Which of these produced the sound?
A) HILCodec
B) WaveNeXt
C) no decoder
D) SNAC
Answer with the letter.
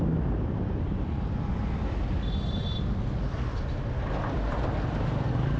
C